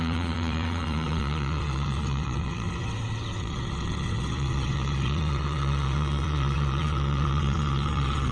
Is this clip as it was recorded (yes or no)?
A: no